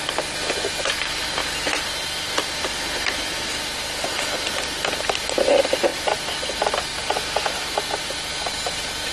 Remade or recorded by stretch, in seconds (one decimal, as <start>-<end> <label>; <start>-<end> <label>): 0.0-1.4 recorded; 1.4-5.0 remade; 5.0-9.1 recorded